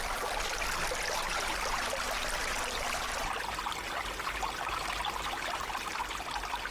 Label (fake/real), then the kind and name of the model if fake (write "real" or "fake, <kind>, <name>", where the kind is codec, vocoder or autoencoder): real